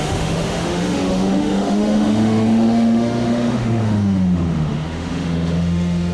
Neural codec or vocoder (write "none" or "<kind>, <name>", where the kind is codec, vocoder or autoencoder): autoencoder, DAC-VAE